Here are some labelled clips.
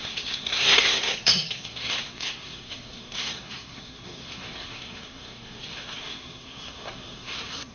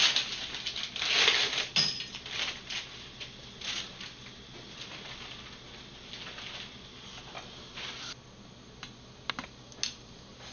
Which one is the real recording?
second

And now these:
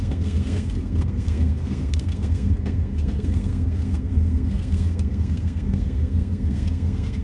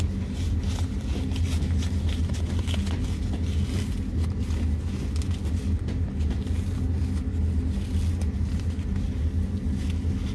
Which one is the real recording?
second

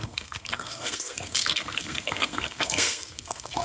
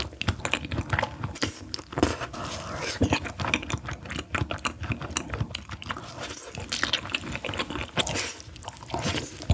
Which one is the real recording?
second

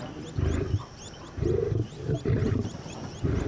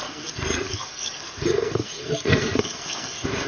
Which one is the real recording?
first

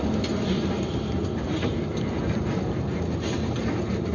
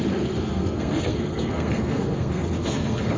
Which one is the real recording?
first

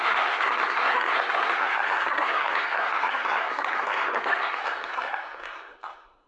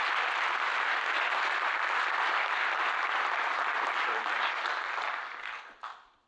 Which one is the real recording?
second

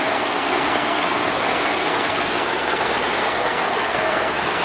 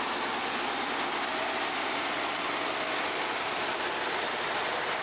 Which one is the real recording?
second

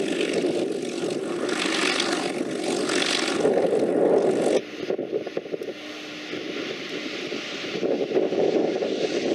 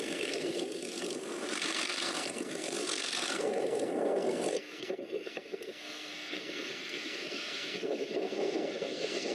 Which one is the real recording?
first